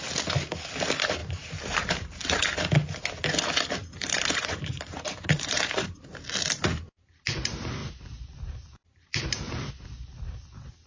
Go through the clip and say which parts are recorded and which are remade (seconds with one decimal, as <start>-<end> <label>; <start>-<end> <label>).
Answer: 0.0-1.2 recorded; 1.2-2.2 remade; 2.2-3.8 recorded; 3.8-6.2 remade; 6.2-7.8 recorded; 7.8-9.7 remade; 9.7-10.9 recorded